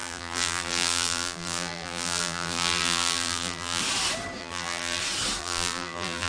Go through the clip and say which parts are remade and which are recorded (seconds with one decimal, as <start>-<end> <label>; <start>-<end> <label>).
0.0-3.8 remade; 3.8-4.4 recorded; 4.4-5.0 remade; 5.0-5.4 recorded; 5.4-6.3 remade